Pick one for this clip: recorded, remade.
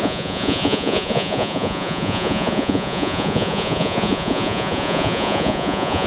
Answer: remade